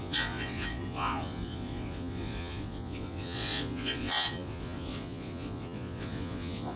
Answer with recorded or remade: remade